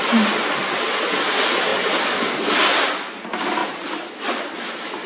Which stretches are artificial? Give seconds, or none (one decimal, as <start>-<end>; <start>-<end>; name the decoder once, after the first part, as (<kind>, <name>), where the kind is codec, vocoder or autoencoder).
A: none